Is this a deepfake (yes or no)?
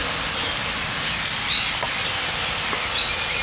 no